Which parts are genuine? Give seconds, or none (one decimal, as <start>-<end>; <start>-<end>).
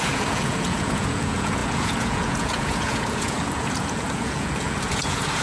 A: none